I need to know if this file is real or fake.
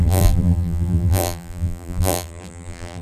fake